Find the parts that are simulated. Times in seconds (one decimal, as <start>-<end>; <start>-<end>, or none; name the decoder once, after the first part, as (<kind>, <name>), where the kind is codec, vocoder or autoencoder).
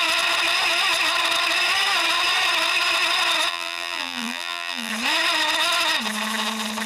3.5-4.9 (vocoder, BigVGAN v2)